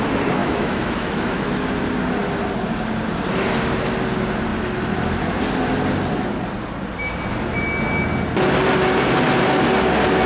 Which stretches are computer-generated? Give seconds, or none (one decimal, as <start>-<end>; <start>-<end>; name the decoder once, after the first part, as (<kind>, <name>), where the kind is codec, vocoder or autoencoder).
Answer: 0.4-1.7 (autoencoder, DAC-VAE)